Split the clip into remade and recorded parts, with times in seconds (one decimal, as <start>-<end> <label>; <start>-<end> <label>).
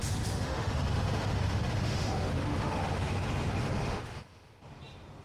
0.0-3.1 remade; 3.1-3.6 recorded; 3.6-4.6 remade; 4.6-5.2 recorded